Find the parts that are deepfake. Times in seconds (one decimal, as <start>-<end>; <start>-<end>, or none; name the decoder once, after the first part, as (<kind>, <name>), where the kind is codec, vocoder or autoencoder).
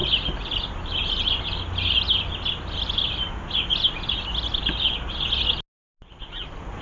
none